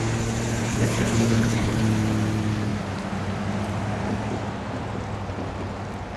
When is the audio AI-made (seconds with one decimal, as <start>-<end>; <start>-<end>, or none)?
0.6-1.8